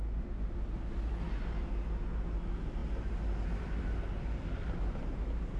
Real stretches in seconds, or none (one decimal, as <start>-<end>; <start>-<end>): 0.0-5.6

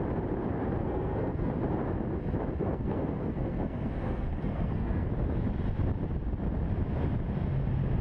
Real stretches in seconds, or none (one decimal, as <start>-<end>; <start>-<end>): 0.0-0.8; 1.5-2.6; 5.1-8.0

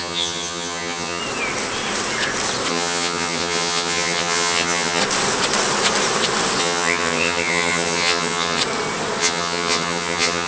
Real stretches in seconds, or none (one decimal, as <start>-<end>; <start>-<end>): 1.2-2.7; 5.0-6.6; 8.6-9.2

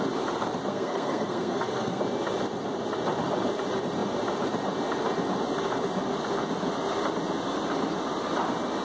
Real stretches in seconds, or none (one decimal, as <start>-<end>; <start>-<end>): 0.0-0.7; 2.0-8.8

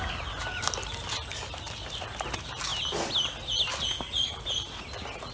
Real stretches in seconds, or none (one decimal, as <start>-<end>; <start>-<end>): 0.0-5.3